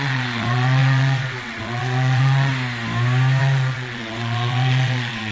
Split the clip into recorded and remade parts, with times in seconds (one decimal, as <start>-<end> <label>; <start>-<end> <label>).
0.0-2.5 remade; 2.5-3.4 recorded; 3.4-5.3 remade